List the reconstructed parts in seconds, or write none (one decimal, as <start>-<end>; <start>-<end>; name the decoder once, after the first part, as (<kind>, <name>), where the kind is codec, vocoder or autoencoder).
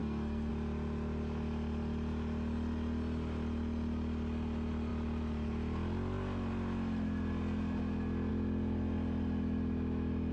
0.0-0.5 (codec, SNAC)